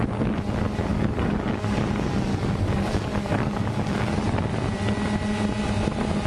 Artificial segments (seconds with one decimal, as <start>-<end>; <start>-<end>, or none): 0.9-1.8; 2.3-4.2